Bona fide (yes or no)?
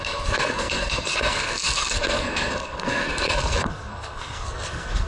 no